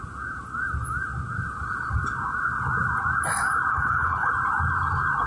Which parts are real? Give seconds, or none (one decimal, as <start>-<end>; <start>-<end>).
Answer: 0.0-3.7; 4.3-5.3